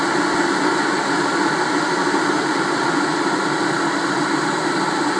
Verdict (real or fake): real